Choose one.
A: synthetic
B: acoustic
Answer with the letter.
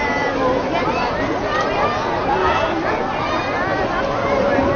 B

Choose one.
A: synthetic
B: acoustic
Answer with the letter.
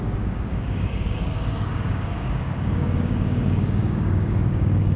A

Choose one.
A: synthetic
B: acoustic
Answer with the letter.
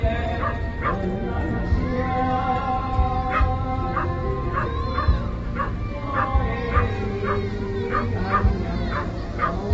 B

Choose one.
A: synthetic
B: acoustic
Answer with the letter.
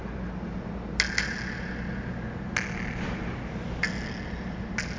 B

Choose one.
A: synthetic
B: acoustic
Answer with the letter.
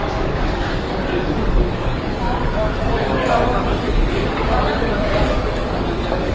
A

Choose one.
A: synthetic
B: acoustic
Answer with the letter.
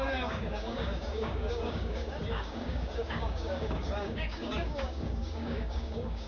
A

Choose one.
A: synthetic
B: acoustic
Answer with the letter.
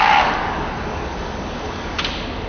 A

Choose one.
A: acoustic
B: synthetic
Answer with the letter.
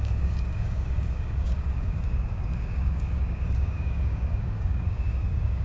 B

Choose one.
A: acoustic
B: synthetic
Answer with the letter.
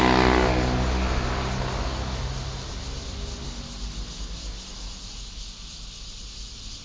A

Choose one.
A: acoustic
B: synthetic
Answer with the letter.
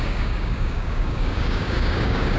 B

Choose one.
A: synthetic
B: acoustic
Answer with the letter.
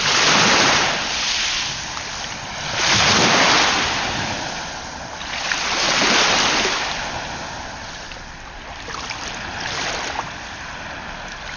B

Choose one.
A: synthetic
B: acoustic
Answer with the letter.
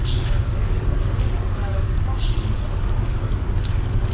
A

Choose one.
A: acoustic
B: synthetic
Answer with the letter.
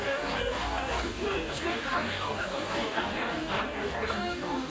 B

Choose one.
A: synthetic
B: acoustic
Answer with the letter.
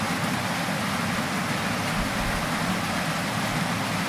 B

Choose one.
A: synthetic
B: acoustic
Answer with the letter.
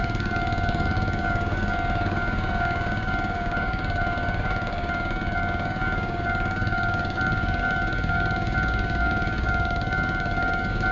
A